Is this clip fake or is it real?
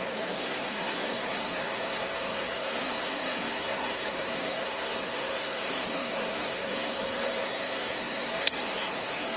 fake